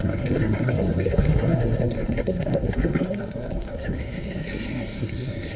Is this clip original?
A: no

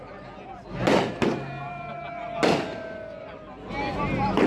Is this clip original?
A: yes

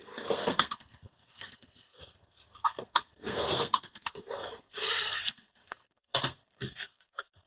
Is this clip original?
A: no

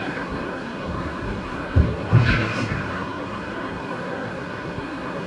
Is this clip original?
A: no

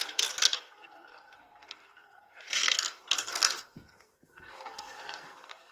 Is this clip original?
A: no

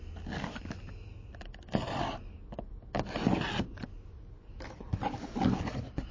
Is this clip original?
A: yes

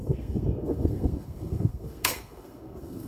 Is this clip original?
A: no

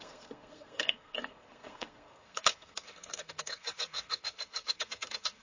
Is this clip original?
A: no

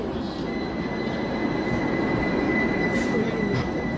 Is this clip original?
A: yes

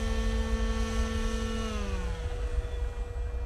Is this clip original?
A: yes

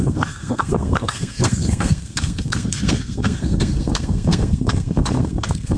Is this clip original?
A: no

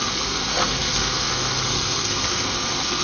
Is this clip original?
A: no